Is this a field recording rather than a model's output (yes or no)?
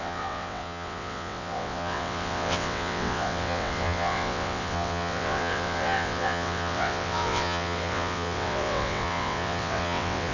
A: no